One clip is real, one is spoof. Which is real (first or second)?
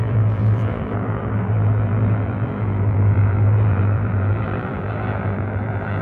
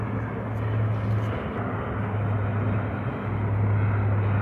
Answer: second